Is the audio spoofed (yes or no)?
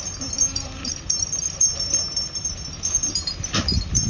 yes